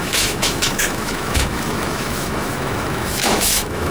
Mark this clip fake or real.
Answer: fake